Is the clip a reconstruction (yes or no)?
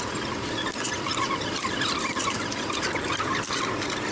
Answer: yes